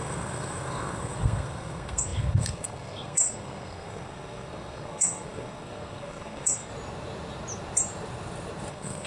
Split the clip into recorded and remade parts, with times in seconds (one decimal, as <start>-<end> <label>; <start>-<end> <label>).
0.0-6.7 remade; 6.7-8.7 recorded; 8.7-9.1 remade